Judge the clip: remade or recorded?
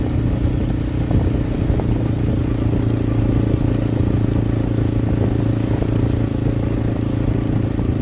recorded